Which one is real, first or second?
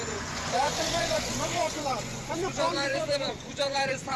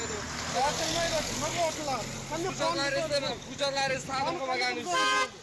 second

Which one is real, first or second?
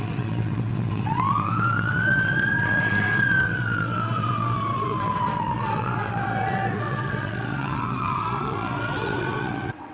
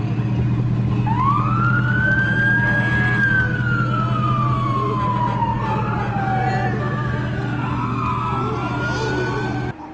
second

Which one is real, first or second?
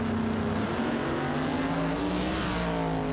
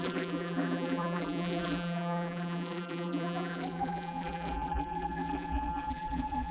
first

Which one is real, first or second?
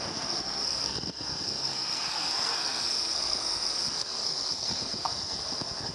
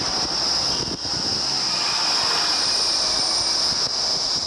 second